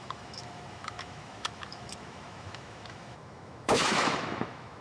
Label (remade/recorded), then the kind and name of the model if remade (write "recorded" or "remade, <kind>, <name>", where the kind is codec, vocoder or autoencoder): remade, autoencoder, DAC-VAE